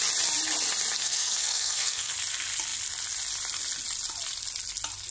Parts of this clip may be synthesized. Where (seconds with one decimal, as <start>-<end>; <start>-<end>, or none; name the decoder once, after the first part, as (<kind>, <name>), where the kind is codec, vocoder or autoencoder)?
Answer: 1.0-2.1 (codec, SNAC)

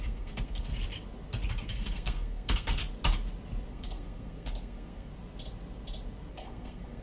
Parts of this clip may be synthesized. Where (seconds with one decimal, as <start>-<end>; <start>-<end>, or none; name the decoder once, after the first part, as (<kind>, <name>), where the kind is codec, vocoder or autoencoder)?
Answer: 0.0-0.7 (codec, SNAC); 1.5-2.8; 3.7-5.1; 6.3-7.0

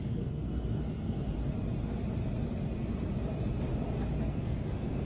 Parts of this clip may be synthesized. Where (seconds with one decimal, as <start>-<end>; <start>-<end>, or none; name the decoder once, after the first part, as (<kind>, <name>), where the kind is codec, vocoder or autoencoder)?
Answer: 0.0-1.3 (codec, SNAC); 4.3-5.0

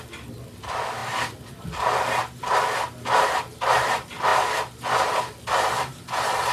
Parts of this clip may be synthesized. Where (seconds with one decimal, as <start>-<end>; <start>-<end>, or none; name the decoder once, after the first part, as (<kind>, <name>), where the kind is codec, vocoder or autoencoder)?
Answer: none